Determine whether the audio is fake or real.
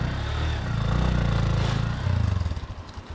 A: real